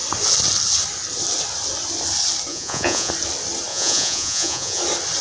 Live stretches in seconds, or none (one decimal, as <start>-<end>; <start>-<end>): 0.0-2.5; 3.1-3.7; 4.8-5.2